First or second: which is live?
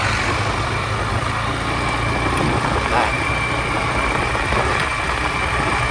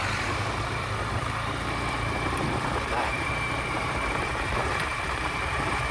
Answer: first